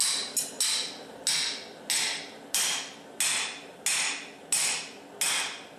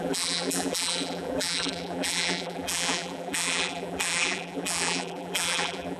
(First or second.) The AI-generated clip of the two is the second